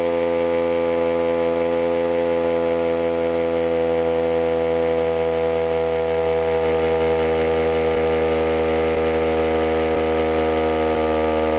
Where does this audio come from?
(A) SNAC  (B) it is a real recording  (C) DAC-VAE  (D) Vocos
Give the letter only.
B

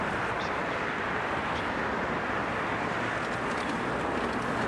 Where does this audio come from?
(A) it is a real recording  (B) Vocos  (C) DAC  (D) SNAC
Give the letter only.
A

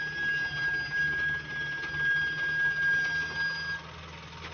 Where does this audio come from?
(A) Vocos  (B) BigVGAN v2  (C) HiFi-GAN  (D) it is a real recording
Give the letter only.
D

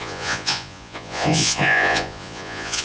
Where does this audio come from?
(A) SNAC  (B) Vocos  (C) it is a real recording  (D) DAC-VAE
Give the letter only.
B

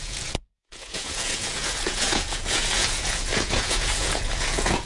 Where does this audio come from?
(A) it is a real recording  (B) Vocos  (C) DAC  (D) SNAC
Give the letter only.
B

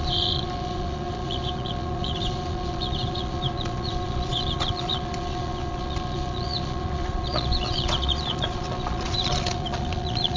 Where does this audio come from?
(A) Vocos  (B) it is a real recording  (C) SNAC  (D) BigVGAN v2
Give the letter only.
A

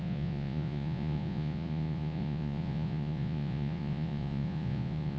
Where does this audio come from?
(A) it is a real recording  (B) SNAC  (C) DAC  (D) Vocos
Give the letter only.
D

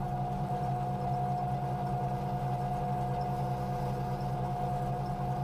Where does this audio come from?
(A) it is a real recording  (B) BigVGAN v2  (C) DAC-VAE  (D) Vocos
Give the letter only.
A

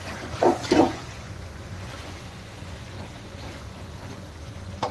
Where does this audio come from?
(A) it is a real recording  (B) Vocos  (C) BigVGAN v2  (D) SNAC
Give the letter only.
B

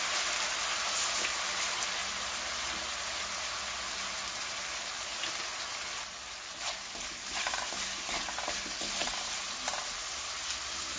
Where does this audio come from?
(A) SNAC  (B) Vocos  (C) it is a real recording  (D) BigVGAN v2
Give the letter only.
C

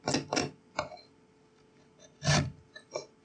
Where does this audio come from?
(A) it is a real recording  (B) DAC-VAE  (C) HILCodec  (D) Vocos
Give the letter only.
A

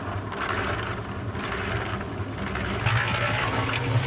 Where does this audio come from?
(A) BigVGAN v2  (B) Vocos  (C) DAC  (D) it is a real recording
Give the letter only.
D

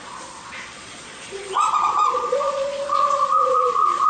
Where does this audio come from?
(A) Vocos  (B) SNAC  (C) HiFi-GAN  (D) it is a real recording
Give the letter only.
A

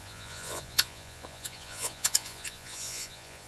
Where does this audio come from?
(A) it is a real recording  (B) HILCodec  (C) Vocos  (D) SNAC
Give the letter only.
C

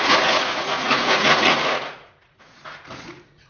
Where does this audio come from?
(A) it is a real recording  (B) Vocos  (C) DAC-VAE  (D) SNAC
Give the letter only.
B